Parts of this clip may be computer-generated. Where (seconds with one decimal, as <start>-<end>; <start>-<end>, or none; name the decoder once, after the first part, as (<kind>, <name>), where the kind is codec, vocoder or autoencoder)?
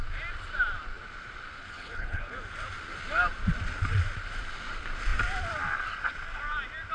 1.6-2.2 (codec, HILCodec)